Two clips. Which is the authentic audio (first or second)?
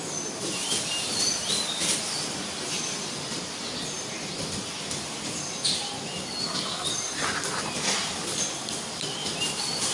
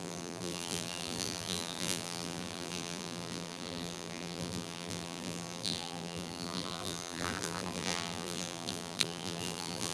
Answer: first